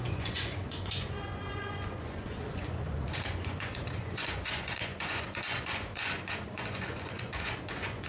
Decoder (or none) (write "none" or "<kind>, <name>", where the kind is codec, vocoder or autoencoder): vocoder, Vocos